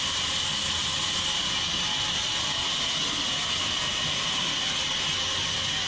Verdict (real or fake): real